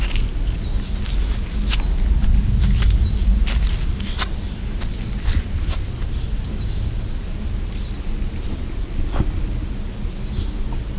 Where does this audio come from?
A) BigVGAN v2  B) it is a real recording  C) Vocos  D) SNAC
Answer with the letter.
B